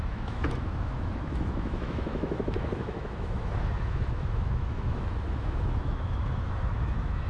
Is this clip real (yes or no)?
no